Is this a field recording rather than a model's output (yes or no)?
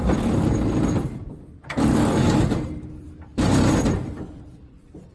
no